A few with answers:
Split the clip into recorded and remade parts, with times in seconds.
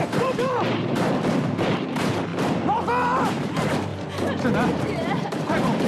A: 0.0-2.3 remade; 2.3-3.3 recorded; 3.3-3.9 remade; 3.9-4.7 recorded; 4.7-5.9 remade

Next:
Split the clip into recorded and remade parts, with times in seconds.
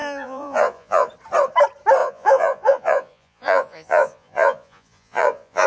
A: 0.0-1.1 remade; 1.1-2.0 recorded; 2.0-5.7 remade